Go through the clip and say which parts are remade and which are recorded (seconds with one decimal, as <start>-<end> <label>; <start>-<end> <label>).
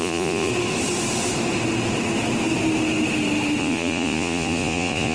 0.0-0.5 remade; 0.5-3.6 recorded; 3.6-5.1 remade